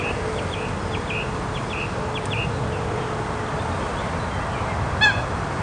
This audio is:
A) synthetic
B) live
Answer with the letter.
B